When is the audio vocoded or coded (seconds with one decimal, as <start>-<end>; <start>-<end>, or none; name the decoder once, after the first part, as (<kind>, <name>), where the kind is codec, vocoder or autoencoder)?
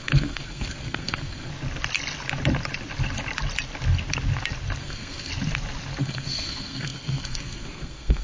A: 0.0-1.5 (codec, SNAC); 4.8-5.3; 6.0-8.2